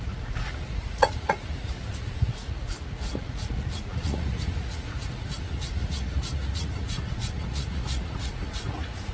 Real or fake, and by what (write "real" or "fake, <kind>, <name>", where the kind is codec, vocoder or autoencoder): fake, vocoder, Vocos